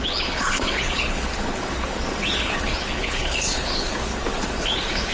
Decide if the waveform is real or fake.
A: fake